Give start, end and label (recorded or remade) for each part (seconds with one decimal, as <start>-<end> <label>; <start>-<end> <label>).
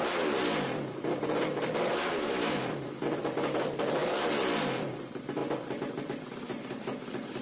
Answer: 0.0-2.1 recorded; 2.1-2.6 remade; 2.6-7.4 recorded